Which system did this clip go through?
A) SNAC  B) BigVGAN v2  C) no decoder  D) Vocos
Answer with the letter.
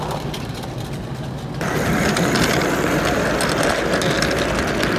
C